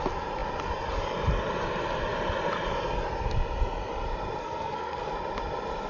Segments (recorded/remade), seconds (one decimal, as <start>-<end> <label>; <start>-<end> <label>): 0.0-4.4 recorded; 4.4-5.1 remade; 5.1-5.9 recorded